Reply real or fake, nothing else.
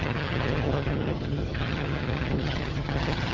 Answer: fake